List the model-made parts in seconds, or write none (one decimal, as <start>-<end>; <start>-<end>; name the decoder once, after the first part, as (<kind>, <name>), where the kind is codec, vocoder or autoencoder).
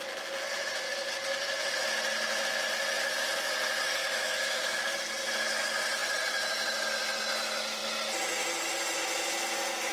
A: 4.0-4.8 (autoencoder, DAC-VAE)